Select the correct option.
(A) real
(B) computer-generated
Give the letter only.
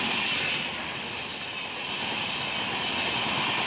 A